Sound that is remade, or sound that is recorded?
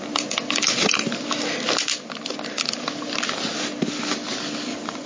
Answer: recorded